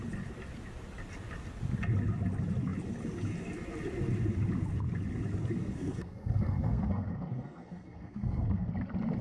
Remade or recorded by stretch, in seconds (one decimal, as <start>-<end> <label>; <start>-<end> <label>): 0.0-5.6 recorded; 5.6-8.7 remade; 8.7-9.2 recorded